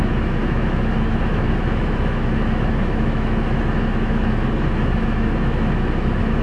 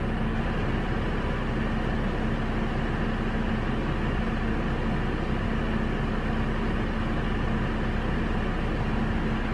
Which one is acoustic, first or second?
second